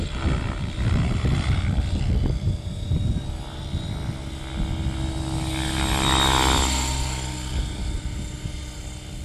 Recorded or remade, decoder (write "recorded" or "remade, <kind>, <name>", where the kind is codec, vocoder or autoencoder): recorded